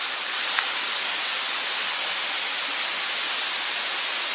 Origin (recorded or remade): recorded